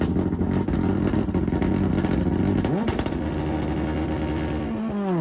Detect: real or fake real